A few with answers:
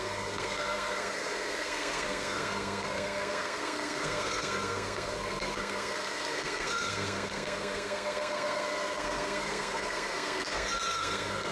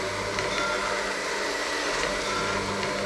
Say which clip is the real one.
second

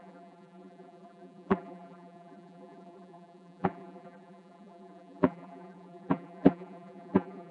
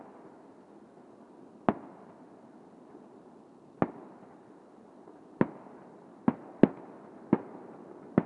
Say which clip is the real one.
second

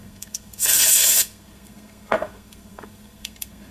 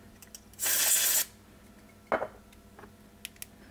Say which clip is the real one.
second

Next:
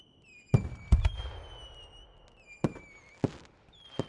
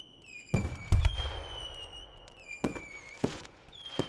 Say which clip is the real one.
first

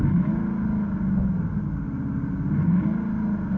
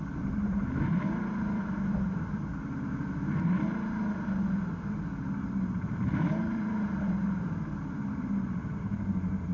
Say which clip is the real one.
first